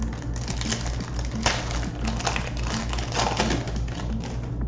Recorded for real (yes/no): yes